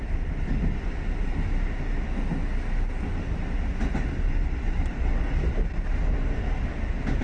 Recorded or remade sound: recorded